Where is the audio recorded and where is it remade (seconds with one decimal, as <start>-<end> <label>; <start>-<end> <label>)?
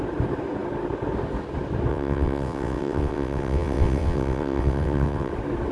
0.0-1.9 recorded; 1.9-5.3 remade; 5.3-5.7 recorded